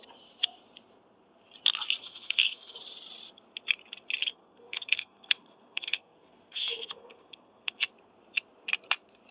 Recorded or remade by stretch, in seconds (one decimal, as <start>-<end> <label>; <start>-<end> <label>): 0.0-2.0 recorded; 2.0-2.8 remade; 2.8-4.2 recorded; 4.2-7.9 remade; 7.9-9.3 recorded